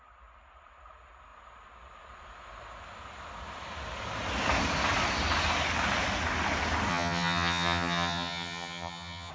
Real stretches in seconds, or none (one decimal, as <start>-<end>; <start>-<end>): 0.0-6.9